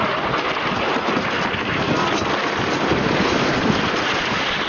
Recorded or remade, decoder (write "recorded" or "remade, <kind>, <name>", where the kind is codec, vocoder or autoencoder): recorded